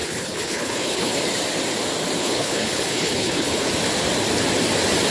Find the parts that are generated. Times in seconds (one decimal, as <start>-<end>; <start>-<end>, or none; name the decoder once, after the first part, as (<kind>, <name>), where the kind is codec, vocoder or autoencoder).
0.0-1.2 (codec, HILCodec); 2.2-3.7